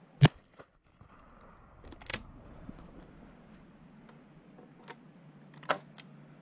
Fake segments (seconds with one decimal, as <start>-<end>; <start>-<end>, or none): 2.1-2.7